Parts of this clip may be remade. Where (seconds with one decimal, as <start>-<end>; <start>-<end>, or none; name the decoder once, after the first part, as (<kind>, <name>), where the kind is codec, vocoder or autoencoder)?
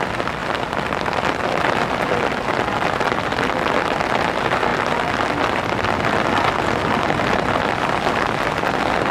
none